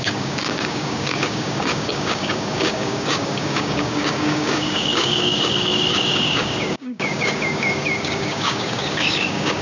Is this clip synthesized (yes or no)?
yes